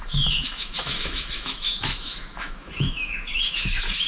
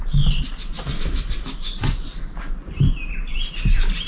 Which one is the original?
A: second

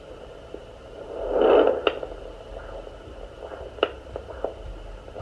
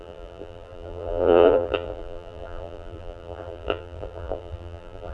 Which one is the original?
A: first